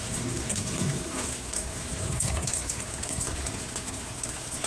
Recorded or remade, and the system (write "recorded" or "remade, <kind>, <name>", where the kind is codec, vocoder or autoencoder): remade, codec, SNAC